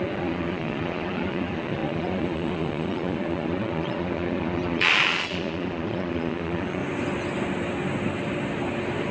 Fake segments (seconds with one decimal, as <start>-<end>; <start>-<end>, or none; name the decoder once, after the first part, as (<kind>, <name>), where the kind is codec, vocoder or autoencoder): 0.0-6.8 (vocoder, Vocos)